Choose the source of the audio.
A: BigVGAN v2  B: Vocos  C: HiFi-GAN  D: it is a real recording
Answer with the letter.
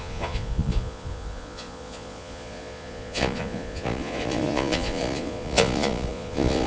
B